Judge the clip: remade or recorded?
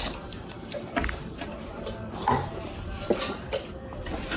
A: remade